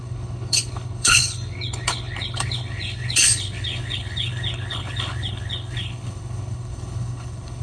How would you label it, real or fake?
fake